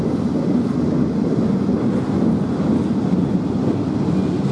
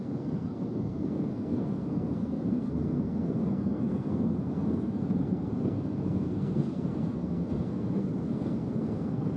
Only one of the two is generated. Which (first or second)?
second